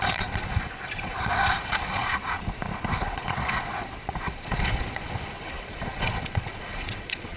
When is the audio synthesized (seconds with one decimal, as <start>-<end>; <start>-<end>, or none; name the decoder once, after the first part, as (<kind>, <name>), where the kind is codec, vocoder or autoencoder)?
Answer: 0.0-7.4 (vocoder, Vocos)